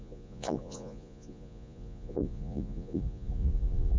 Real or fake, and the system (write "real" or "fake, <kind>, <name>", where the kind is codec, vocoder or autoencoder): fake, vocoder, Vocos